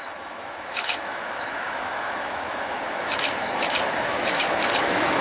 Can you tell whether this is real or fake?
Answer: fake